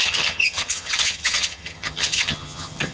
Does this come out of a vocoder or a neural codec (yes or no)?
yes